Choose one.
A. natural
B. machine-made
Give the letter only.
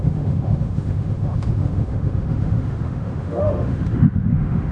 B